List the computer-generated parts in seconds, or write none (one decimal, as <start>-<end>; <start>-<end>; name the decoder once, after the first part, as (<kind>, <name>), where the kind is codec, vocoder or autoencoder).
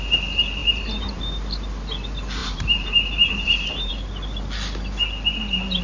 0.6-1.2 (vocoder, BigVGAN v2); 2.4-3.9